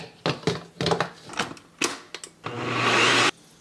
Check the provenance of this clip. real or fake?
real